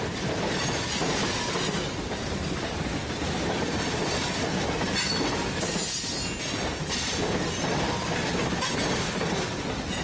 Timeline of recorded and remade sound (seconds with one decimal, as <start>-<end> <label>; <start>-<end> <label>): 0.0-10.0 recorded